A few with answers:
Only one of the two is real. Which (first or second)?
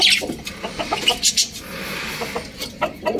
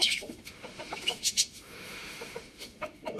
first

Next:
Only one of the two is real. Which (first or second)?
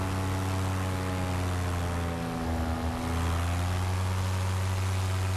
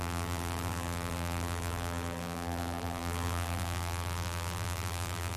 first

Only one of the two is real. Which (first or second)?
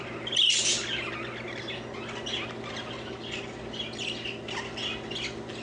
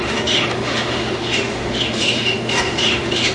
first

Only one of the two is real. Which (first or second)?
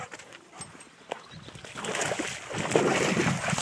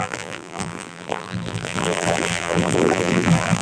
first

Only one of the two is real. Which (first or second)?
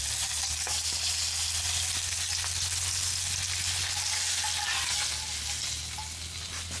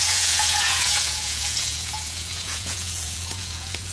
first